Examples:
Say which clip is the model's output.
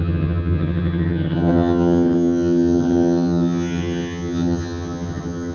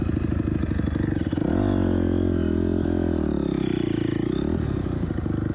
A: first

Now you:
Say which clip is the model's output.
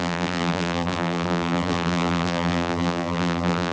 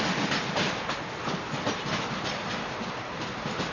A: first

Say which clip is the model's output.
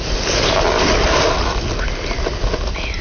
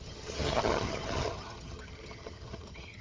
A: second